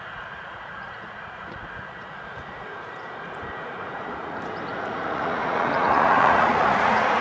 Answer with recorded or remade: remade